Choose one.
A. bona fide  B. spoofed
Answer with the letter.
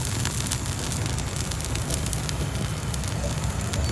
A